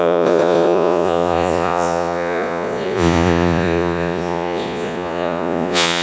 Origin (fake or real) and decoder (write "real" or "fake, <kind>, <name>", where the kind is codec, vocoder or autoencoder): fake, vocoder, Vocos